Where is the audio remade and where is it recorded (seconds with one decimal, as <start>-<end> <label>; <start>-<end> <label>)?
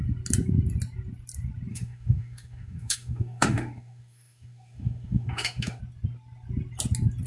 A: 0.0-1.7 recorded; 1.7-5.8 remade; 5.8-7.3 recorded